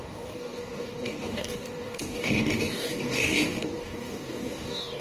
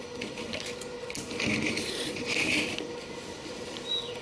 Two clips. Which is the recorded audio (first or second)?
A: second